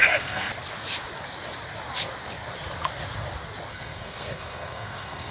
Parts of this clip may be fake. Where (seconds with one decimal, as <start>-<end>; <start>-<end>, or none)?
0.0-0.5; 3.7-5.3